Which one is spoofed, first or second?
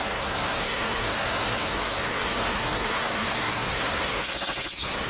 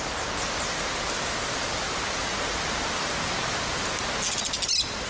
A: first